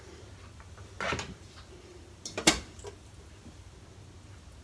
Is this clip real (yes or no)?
yes